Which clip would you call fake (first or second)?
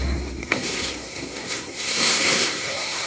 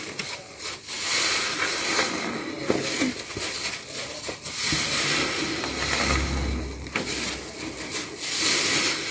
first